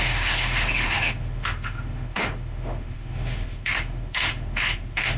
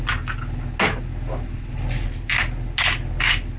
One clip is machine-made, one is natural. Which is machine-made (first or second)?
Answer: first